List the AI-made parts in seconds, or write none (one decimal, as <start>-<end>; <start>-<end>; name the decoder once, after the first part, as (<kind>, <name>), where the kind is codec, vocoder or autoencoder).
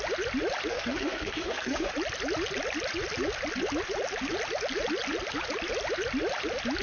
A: 0.7-1.9 (codec, SNAC)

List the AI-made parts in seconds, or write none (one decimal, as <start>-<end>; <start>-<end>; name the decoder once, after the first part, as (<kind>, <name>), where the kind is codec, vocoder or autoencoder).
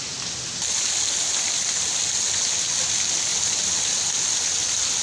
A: none